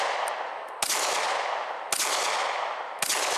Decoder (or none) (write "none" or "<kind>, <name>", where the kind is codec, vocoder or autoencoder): none